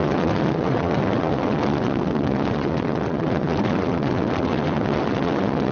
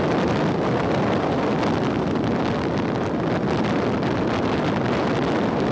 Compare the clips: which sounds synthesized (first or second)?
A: first